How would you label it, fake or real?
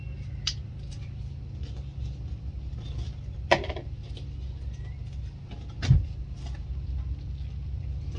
real